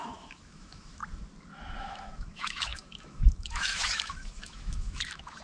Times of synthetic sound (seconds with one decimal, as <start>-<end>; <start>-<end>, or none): 0.0-1.0; 1.8-5.4